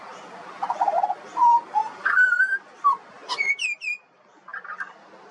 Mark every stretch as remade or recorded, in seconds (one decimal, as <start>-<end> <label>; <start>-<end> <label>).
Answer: 0.0-5.3 recorded